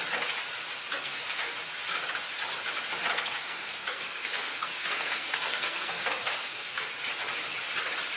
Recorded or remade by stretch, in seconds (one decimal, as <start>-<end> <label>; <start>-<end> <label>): 0.0-0.9 recorded; 0.9-1.5 remade; 1.5-3.1 recorded; 3.1-6.9 remade; 6.9-8.2 recorded